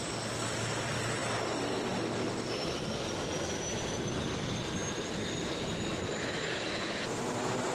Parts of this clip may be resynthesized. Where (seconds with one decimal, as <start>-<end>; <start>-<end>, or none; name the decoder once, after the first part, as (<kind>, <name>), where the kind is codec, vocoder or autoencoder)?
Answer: 5.9-7.0 (autoencoder, DAC-VAE)